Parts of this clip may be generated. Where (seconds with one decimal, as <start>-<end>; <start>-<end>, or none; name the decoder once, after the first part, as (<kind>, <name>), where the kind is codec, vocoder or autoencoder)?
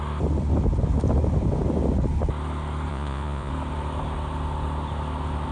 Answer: 2.9-3.5 (vocoder, Vocos)